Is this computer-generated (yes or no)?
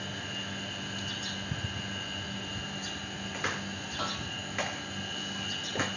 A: no